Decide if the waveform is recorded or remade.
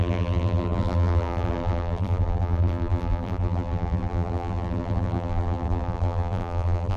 remade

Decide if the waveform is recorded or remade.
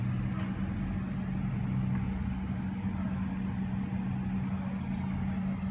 recorded